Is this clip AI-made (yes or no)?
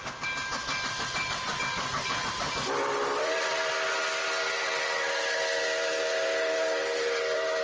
no